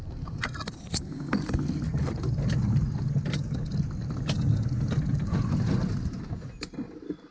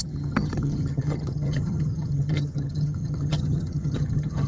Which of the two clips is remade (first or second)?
second